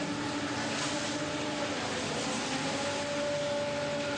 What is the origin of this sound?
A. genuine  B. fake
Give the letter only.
A